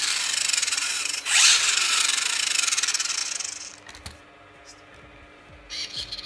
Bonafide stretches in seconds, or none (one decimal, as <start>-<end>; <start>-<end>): 0.0-0.6; 2.0-6.3